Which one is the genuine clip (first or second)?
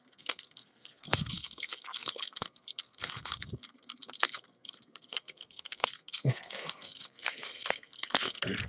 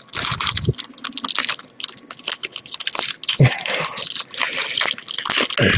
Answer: second